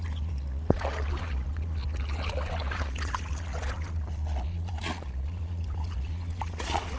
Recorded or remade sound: remade